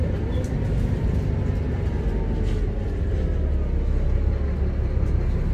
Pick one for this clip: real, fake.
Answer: real